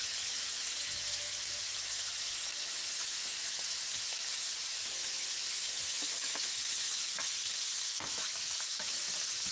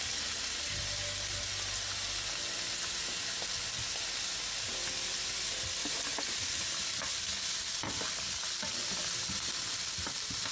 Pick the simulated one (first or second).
first